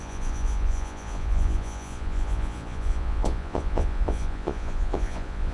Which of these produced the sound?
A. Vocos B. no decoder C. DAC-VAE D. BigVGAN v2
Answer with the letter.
A